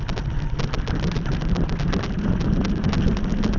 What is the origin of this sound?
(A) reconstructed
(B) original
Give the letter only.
B